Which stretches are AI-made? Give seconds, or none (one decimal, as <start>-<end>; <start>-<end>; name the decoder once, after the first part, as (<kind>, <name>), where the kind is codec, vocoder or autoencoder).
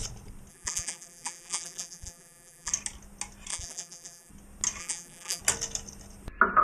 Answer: 0.5-2.7 (vocoder, BigVGAN v2); 3.5-4.3; 4.8-5.4